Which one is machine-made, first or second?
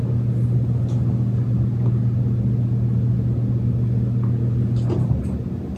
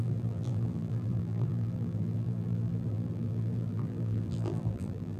second